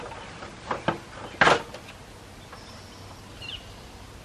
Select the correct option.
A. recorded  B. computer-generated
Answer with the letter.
A